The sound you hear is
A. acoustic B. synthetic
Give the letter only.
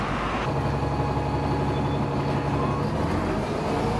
A